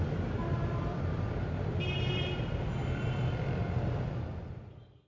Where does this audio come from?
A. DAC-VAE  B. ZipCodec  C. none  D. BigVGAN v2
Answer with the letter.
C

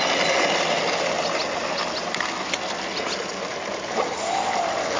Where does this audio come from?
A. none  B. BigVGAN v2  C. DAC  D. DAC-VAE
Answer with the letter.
A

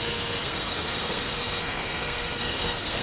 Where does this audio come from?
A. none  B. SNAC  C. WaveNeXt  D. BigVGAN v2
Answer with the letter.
B